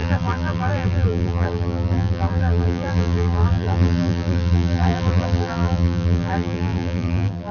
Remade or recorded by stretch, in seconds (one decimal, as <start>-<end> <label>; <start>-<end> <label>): 0.0-7.5 remade

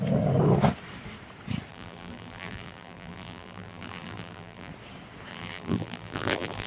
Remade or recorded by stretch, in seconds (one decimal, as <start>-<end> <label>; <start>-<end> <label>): 0.0-1.7 recorded; 1.7-4.7 remade; 4.7-5.3 recorded; 5.3-6.7 remade

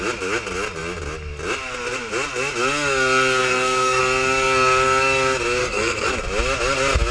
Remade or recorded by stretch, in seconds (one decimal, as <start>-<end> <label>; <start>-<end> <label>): 0.0-3.4 recorded; 3.4-4.0 remade; 4.0-5.6 recorded; 5.6-6.1 remade; 6.1-7.1 recorded

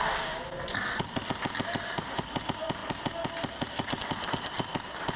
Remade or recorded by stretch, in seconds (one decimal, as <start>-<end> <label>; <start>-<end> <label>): 0.0-5.2 recorded

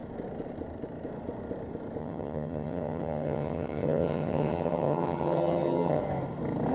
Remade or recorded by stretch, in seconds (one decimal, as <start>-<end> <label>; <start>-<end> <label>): 0.0-2.0 recorded; 2.0-6.0 remade; 6.0-6.7 recorded

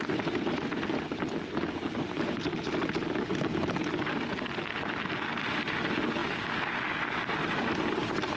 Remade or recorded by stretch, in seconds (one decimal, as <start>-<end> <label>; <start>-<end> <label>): 0.0-8.4 recorded

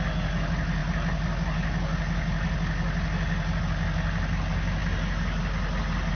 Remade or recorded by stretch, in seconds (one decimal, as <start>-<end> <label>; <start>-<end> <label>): 0.0-6.1 recorded